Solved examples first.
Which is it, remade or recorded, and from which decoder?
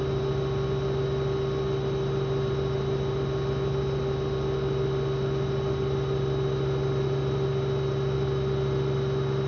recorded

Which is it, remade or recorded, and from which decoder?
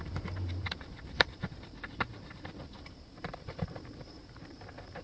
remade, vocoder, BigVGAN v2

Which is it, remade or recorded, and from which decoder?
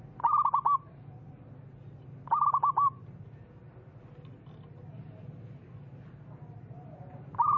recorded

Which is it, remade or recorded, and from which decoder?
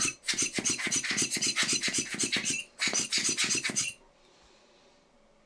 recorded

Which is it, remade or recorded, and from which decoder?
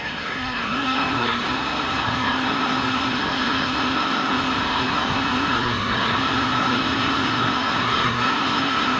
remade, codec, SNAC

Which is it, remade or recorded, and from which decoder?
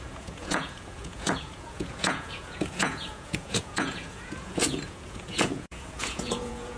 remade, vocoder, Vocos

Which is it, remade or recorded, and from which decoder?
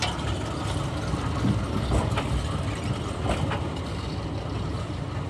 recorded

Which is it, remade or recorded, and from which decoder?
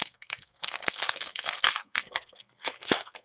remade, codec, SNAC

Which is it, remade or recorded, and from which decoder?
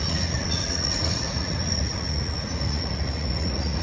remade, vocoder, Vocos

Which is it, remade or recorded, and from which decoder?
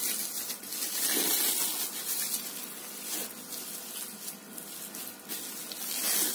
recorded